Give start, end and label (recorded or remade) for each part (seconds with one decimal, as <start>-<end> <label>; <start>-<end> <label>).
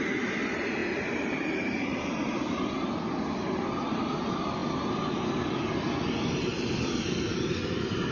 0.0-0.8 recorded; 0.8-2.9 remade; 2.9-8.1 recorded